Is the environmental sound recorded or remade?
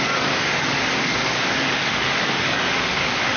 remade